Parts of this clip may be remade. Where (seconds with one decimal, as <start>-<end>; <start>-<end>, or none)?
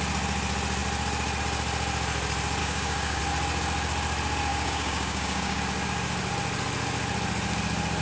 2.6-3.2; 4.5-5.6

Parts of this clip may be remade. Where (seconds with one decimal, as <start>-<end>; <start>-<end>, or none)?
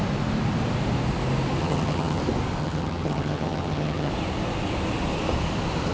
1.6-2.2; 2.6-4.1